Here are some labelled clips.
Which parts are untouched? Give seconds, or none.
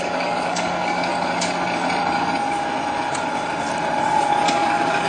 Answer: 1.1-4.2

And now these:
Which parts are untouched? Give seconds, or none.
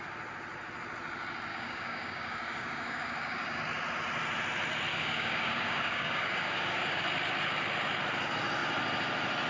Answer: 0.0-1.5; 3.6-4.9; 7.0-9.5